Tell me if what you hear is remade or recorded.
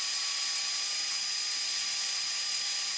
recorded